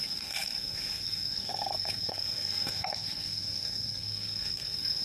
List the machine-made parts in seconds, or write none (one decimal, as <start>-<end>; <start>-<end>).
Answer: 0.0-5.0